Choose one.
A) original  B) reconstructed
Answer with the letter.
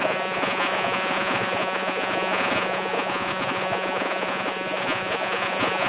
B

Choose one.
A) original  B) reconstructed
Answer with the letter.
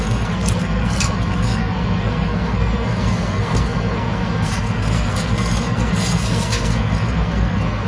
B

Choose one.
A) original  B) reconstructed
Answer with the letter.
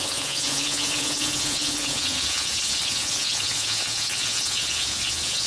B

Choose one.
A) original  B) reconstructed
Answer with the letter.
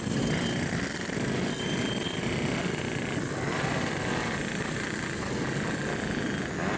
A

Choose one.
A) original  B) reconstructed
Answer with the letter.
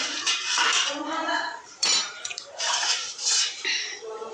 B